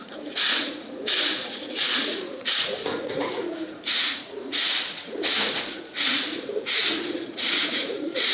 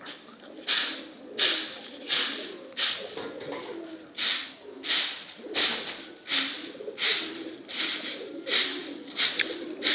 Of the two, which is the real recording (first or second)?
second